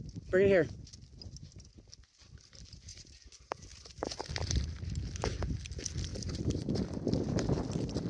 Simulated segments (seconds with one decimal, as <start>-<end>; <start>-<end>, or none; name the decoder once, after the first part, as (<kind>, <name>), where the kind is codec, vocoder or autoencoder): 2.9-4.8 (vocoder, BigVGAN v2); 6.1-6.7